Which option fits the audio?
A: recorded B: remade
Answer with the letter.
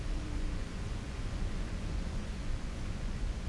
B